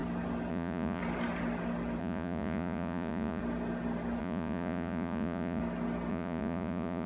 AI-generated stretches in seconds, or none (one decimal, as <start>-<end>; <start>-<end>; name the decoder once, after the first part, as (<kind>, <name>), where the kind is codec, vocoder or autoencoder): 0.5-1.0 (vocoder, Vocos); 2.0-3.4; 4.2-5.6; 6.1-7.1